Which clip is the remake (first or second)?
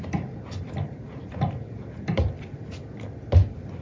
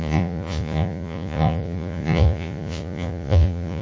second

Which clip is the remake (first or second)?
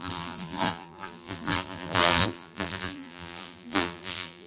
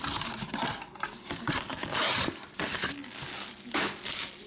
first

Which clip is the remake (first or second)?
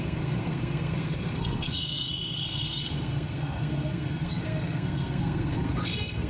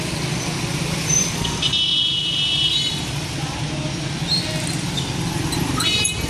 first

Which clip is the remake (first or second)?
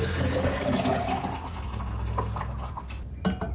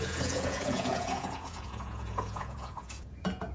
second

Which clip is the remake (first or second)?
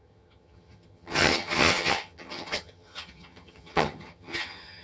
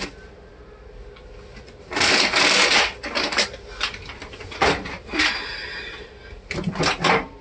first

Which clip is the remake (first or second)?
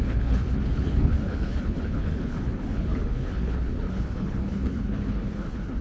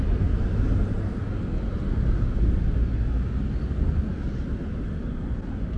first